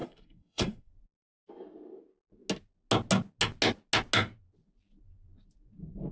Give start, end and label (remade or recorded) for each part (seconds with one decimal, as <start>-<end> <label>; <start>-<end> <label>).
0.0-0.9 remade; 0.9-6.1 recorded